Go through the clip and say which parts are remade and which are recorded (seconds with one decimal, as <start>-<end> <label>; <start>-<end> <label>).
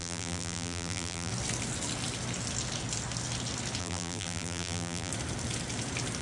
0.0-1.3 remade; 1.3-3.8 recorded; 3.8-5.1 remade; 5.1-6.2 recorded